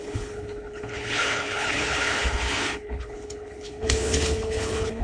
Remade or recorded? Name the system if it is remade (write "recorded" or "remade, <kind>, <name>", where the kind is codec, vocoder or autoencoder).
remade, codec, HILCodec